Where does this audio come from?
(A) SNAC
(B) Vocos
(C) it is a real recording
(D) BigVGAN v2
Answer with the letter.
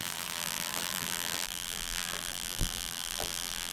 D